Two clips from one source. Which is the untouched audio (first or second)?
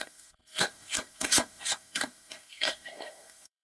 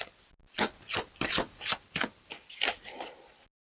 second